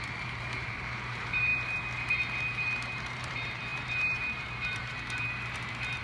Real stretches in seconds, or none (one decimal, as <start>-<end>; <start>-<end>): 1.5-3.1